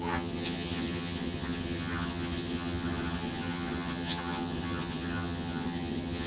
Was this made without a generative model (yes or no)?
no